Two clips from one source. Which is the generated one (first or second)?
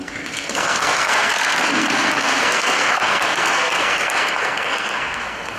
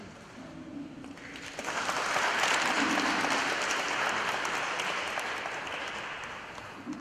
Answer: first